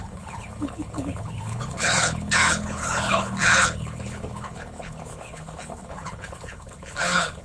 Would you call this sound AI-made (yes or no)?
yes